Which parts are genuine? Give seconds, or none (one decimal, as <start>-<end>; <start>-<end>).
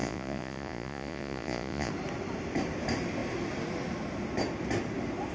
1.9-5.3